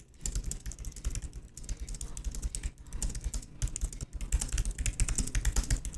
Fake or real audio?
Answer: real